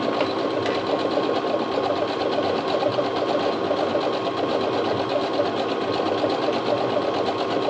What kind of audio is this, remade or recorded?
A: recorded